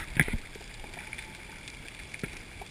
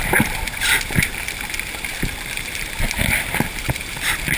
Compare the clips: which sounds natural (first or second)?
first